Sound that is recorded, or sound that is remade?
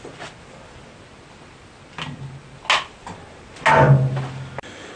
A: recorded